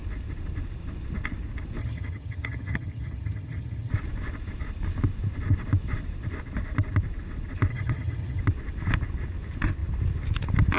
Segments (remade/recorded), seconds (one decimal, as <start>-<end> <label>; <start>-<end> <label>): 0.0-1.8 recorded; 1.8-3.9 remade; 3.9-7.7 recorded; 7.7-8.4 remade; 8.4-10.8 recorded